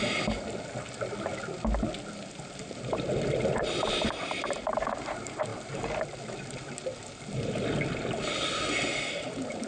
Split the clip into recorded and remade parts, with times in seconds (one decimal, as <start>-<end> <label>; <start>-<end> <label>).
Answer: 0.0-9.7 recorded